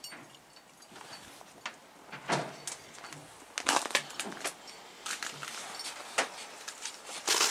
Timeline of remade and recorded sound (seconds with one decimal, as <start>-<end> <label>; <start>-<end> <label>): 0.0-7.5 recorded